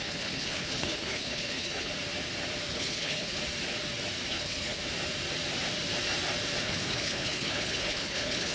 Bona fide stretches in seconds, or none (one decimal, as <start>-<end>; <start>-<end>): 1.9-2.7; 3.4-4.3; 4.8-6.6